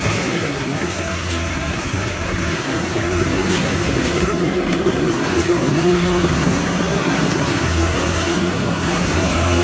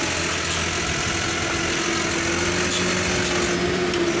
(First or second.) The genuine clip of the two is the second